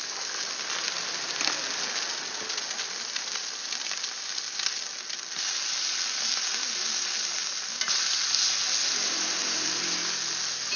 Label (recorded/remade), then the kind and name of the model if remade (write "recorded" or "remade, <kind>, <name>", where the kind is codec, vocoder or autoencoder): recorded